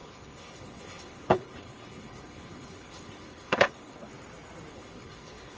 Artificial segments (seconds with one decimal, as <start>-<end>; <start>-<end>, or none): 0.0-4.1; 4.7-5.6